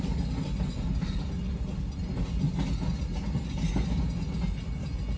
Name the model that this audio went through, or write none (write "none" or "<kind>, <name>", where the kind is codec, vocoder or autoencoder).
none